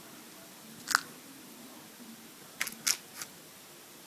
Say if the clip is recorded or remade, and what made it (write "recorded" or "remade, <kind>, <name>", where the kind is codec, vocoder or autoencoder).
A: recorded